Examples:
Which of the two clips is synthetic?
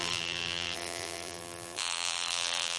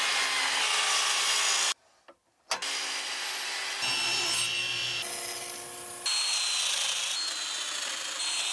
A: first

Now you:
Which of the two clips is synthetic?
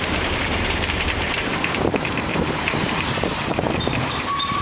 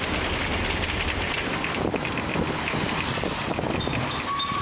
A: first